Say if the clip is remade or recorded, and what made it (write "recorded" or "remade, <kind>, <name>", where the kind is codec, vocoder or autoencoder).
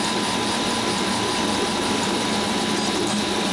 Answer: recorded